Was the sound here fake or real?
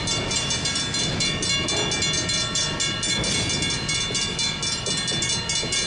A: real